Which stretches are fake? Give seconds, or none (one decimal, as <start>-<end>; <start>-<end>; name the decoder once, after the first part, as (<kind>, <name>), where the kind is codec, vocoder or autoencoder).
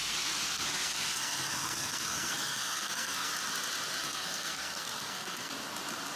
0.0-3.3 (codec, SNAC); 4.0-5.5